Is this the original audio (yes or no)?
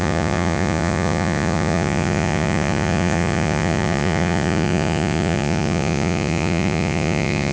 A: no